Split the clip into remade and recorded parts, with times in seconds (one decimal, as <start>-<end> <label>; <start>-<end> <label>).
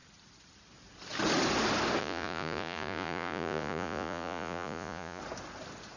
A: 0.0-2.0 recorded; 2.0-5.2 remade; 5.2-6.0 recorded